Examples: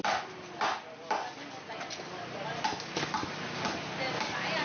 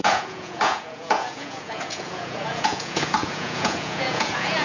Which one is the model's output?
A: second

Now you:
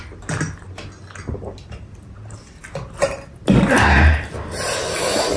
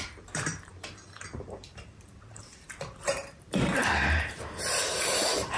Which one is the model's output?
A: second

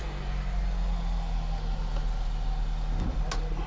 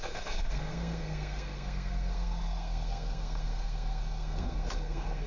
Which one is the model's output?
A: second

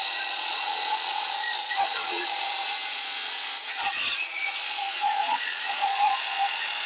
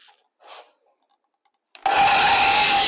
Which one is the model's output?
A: first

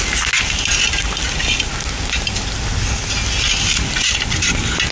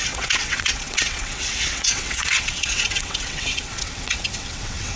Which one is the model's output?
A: second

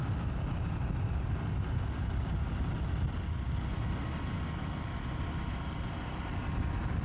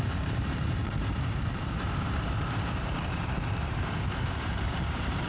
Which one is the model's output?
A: second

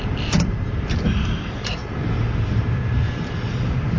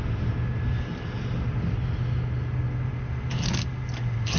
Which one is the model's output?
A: first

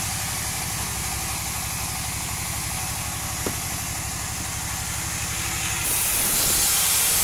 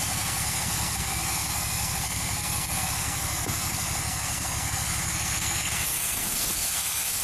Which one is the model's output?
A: second